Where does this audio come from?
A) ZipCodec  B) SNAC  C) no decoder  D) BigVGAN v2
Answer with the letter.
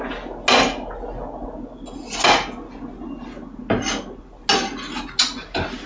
C